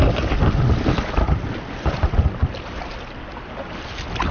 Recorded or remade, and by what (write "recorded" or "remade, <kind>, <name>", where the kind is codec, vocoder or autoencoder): recorded